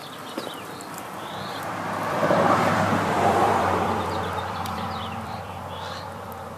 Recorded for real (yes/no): no